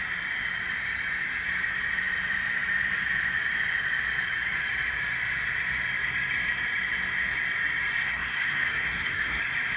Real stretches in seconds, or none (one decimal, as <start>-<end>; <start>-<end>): 0.0-8.0; 9.4-9.8